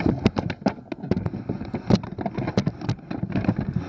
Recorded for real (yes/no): yes